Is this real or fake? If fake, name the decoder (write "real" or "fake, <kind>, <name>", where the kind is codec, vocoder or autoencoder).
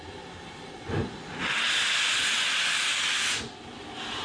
real